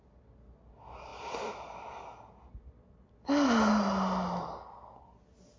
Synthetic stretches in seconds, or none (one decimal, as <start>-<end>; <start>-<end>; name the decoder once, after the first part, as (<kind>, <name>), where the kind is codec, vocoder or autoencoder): none